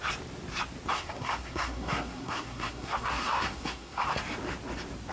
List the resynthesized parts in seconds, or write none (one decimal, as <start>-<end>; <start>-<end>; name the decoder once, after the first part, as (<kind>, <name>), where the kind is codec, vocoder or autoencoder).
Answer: 0.9-4.0 (codec, SNAC)